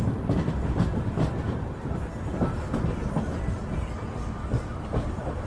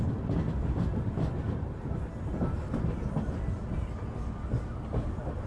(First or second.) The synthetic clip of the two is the first